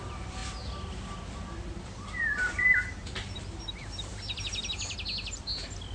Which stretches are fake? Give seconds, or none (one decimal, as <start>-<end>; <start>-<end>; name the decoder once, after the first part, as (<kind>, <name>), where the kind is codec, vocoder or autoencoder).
0.0-0.4 (vocoder, BigVGAN v2); 1.7-5.9